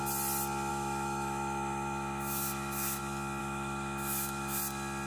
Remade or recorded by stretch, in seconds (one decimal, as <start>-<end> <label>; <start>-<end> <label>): 0.0-0.7 recorded; 0.7-3.0 remade; 3.0-3.4 recorded; 3.4-4.6 remade; 4.6-5.1 recorded